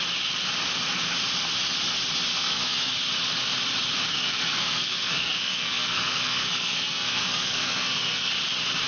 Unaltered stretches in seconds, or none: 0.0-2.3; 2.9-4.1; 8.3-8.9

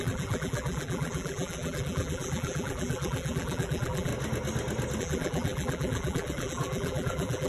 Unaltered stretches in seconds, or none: 4.1-5.0

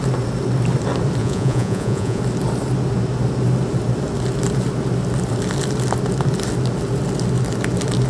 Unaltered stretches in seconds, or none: 0.0-1.2; 2.2-8.1

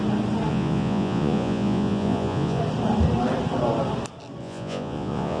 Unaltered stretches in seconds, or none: 0.0-0.5; 2.6-4.4